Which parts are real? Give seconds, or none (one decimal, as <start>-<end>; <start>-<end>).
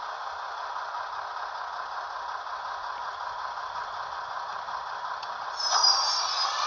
0.0-6.7